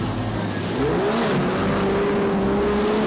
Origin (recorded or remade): recorded